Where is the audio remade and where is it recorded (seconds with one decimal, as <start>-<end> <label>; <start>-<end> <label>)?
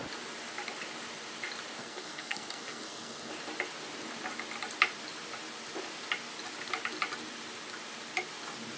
0.0-1.8 recorded; 1.8-3.3 remade; 3.3-8.8 recorded